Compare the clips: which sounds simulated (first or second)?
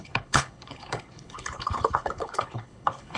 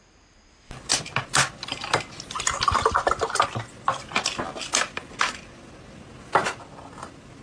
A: first